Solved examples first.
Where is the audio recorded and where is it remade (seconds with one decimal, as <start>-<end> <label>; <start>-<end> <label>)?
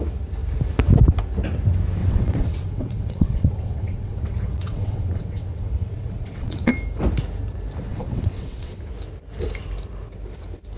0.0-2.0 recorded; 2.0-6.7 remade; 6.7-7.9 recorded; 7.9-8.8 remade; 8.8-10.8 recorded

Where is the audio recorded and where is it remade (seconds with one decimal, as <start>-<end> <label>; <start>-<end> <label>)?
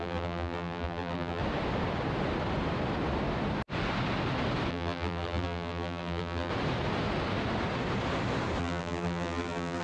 0.0-1.4 remade; 1.4-4.7 recorded; 4.7-6.5 remade; 6.5-8.6 recorded; 8.6-9.8 remade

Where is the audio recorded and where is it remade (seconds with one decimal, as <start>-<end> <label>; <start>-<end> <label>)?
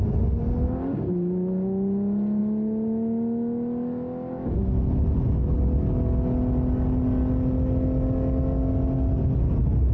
0.0-9.9 recorded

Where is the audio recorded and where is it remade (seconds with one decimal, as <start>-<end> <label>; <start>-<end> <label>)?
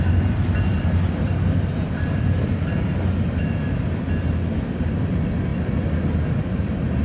0.0-0.7 recorded; 0.7-2.5 remade; 2.5-7.0 recorded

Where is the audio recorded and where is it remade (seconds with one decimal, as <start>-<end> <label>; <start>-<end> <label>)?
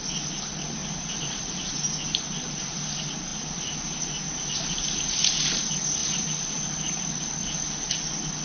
0.0-0.8 recorded; 0.8-1.6 remade; 1.6-6.0 recorded; 6.0-6.8 remade; 6.8-8.4 recorded